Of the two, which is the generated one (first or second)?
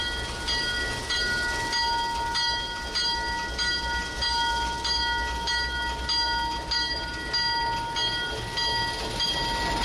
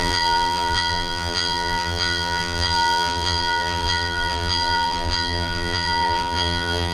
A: second